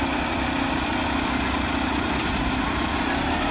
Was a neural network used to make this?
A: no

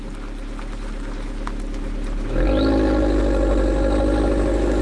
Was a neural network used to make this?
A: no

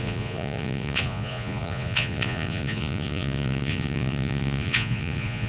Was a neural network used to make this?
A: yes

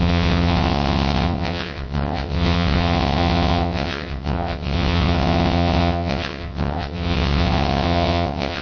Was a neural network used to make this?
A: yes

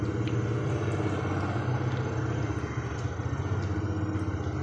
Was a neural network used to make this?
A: no